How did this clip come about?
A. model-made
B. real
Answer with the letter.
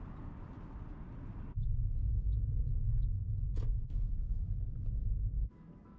B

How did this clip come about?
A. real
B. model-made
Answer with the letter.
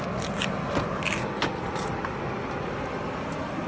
A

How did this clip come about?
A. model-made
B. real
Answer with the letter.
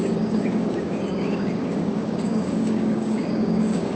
A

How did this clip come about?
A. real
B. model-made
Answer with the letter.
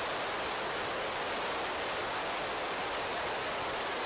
A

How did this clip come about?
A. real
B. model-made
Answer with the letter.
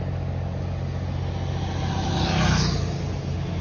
A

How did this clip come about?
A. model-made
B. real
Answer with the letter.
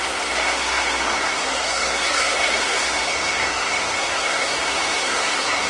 A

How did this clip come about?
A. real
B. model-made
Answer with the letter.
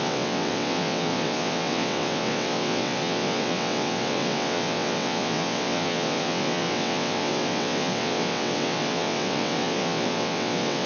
B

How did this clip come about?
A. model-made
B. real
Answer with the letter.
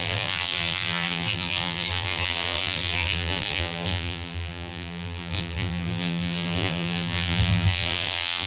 A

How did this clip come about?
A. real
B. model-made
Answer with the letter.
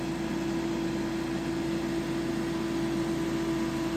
A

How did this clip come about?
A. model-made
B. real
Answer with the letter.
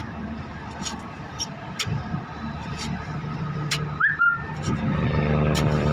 A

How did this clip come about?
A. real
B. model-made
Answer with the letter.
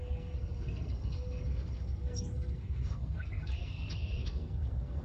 B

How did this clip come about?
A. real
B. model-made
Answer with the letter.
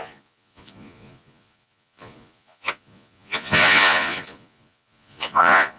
B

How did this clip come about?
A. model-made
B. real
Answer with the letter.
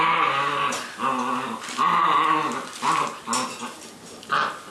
B